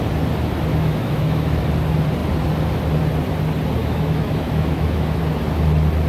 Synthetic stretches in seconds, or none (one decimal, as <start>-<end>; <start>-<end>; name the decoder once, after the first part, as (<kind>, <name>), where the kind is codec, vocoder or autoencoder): 0.7-1.6 (autoencoder, DAC-VAE); 3.8-5.2